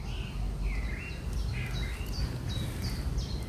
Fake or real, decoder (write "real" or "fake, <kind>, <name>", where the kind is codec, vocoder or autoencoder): real